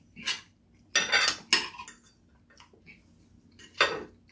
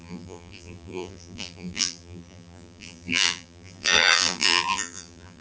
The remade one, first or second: second